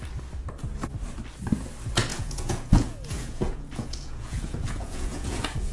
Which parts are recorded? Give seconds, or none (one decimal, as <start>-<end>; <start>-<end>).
0.0-2.1